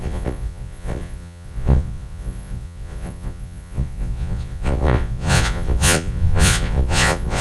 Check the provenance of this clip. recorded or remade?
remade